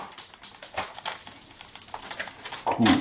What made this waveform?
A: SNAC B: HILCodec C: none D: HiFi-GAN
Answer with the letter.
C